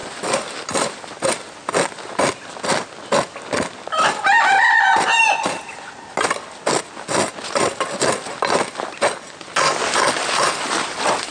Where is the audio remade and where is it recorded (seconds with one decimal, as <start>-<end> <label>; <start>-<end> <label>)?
0.0-11.3 recorded